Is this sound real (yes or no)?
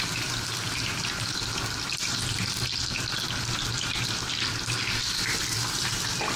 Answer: yes